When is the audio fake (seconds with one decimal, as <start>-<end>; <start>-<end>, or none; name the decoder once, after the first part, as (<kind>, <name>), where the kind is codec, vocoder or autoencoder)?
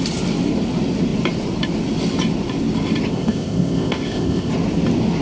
3.1-4.5 (codec, ZipCodec)